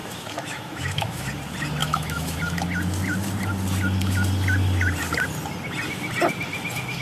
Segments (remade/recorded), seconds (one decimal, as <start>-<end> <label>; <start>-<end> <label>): 0.0-1.3 remade; 1.3-1.8 recorded; 1.8-2.4 remade; 2.4-7.0 recorded